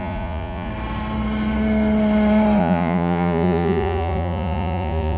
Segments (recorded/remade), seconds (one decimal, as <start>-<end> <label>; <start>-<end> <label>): 0.0-0.7 remade; 0.7-2.6 recorded; 2.6-5.2 remade